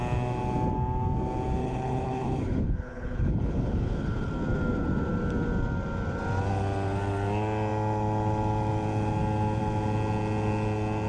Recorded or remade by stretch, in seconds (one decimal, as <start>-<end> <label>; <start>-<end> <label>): 0.0-1.6 recorded; 1.6-4.3 remade; 4.3-11.1 recorded